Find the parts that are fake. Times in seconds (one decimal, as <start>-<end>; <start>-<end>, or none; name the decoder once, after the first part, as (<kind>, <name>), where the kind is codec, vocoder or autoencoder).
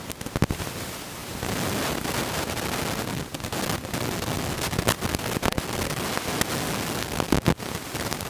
none